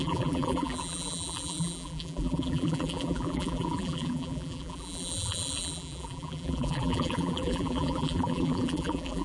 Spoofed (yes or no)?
yes